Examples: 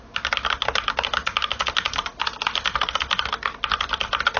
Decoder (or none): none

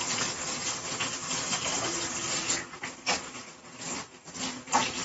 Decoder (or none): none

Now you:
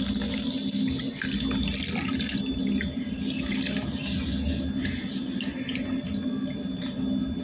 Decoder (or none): none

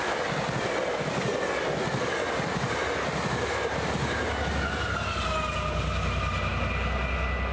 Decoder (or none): none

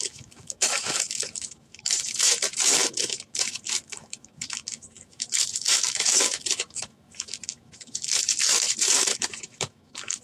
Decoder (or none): autoencoder, DAC-VAE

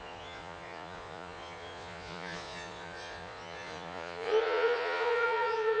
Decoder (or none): vocoder, Vocos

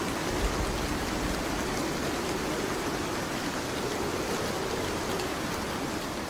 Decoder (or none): none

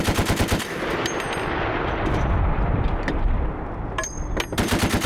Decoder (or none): none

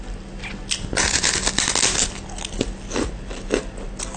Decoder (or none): none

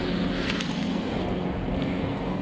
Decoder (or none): codec, SNAC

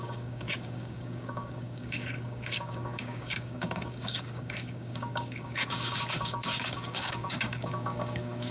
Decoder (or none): codec, DAC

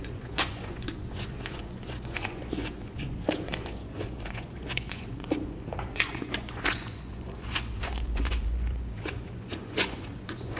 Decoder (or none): vocoder, Vocos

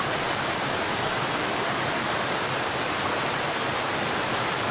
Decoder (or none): none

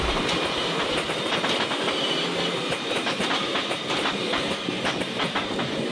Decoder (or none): vocoder, BigVGAN v2